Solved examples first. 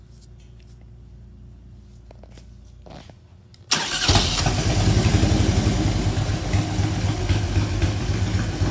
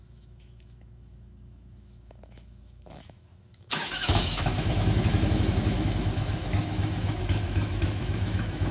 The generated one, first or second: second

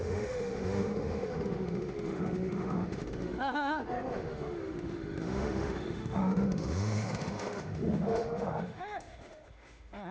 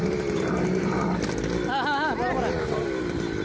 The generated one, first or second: first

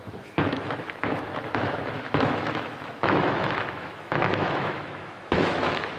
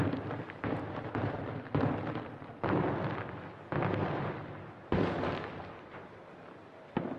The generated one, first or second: first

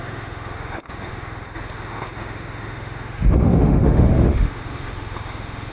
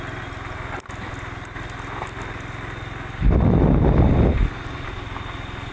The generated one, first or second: first